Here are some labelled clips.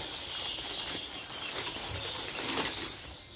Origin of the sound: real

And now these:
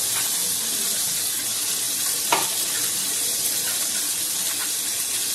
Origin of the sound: real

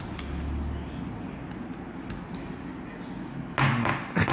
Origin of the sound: real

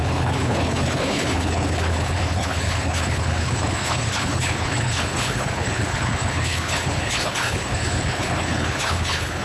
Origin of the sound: fake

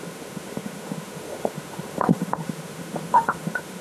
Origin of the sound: fake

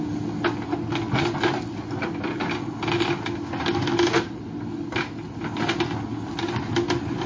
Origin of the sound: real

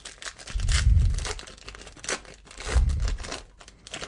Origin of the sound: real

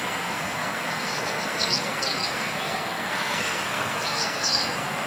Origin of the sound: fake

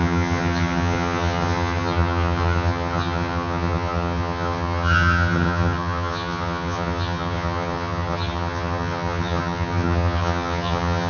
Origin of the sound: fake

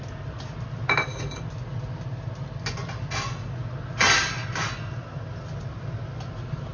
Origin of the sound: real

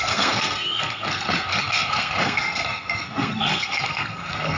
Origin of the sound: fake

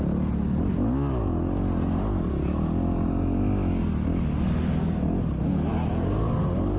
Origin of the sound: real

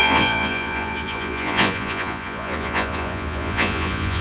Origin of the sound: fake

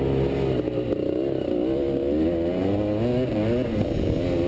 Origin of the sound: real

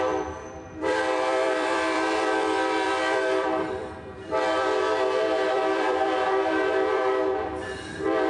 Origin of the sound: fake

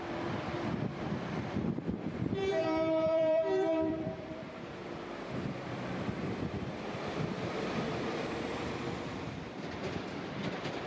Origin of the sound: fake